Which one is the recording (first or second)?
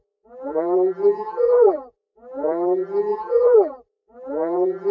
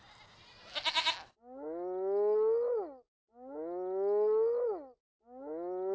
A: second